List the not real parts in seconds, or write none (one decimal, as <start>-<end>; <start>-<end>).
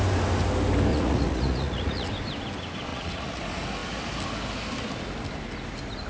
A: 0.9-2.1; 2.9-3.4